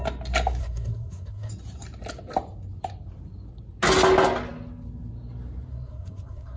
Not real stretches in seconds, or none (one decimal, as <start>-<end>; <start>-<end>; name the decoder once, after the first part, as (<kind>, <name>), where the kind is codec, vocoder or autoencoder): 0.6-1.5 (codec, SNAC); 5.7-6.6